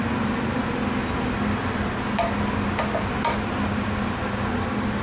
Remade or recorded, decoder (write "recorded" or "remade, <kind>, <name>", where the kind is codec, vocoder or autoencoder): recorded